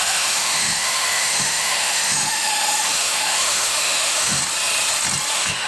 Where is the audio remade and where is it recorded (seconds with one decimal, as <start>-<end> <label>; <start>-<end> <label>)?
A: 0.0-4.4 remade; 4.4-5.3 recorded; 5.3-5.7 remade

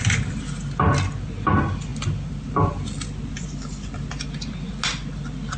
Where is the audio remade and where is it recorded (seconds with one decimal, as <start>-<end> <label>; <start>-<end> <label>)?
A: 0.0-5.6 recorded

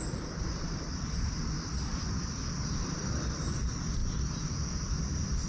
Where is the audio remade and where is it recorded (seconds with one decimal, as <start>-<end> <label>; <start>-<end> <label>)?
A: 0.0-1.9 remade; 1.9-2.8 recorded; 2.8-4.0 remade; 4.0-4.9 recorded; 4.9-5.5 remade

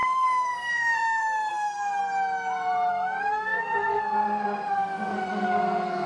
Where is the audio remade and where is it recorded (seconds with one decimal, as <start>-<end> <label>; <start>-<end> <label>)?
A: 0.0-2.0 remade; 2.0-2.9 recorded; 2.9-6.1 remade